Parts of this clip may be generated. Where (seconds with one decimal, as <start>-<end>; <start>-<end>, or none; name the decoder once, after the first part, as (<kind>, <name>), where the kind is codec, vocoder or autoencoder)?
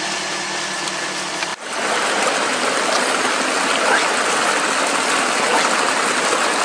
none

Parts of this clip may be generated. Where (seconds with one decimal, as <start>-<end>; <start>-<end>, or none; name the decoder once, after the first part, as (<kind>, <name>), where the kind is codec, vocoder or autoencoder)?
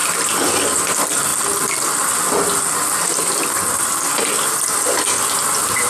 none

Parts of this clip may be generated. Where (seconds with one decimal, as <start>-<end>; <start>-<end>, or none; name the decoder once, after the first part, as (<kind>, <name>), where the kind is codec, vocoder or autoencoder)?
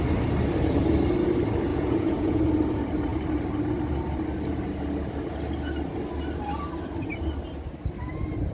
1.7-2.4 (vocoder, Vocos)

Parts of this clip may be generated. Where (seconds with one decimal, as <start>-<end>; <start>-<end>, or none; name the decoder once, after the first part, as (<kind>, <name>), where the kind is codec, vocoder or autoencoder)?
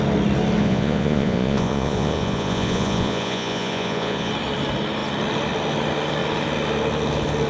0.6-4.3 (vocoder, Vocos)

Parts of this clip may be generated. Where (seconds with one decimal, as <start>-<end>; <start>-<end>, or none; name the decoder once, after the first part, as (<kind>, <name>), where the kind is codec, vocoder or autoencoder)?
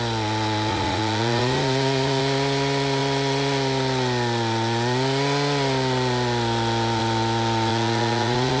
0.7-2.2 (vocoder, Vocos); 7.7-8.6